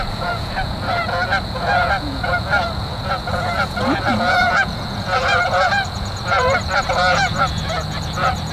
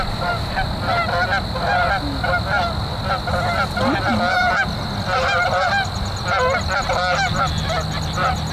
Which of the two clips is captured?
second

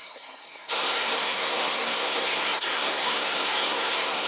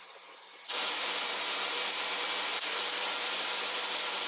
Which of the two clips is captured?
second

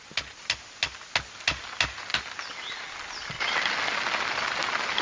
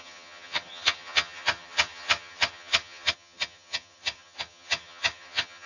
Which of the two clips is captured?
first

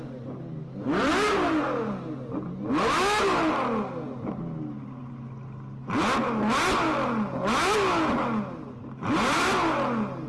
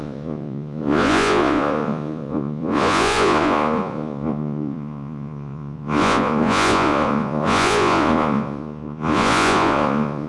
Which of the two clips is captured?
first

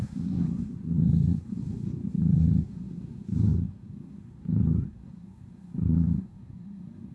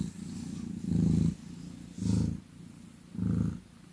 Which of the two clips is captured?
second